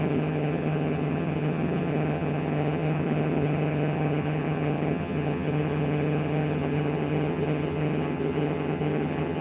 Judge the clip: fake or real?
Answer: fake